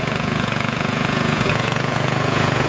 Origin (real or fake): fake